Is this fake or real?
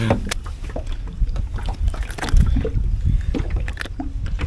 real